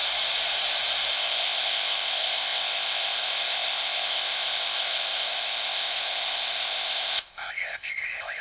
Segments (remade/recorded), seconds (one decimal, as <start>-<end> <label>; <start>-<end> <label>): 0.0-1.1 recorded; 1.1-8.4 remade

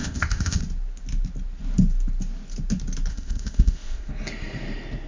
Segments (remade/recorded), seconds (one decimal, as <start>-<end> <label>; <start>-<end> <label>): 0.0-0.6 remade; 0.6-3.1 recorded; 3.1-4.1 remade; 4.1-5.1 recorded

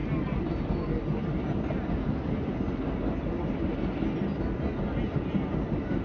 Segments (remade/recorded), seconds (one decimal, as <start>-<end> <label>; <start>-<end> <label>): 0.0-6.0 recorded

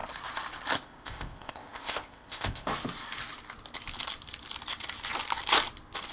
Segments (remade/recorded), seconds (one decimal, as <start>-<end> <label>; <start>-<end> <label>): 0.0-0.8 recorded; 0.8-2.7 remade; 2.7-6.1 recorded

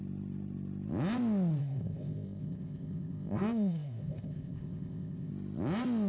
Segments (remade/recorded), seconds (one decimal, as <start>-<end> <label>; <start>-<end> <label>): 0.0-1.6 recorded; 1.6-5.3 remade; 5.3-6.1 recorded

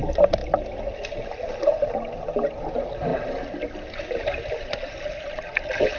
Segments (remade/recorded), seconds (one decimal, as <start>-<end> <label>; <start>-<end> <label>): 0.0-6.0 recorded

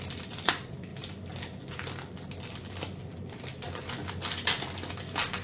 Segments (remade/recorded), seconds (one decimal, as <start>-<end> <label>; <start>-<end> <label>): 0.0-5.4 recorded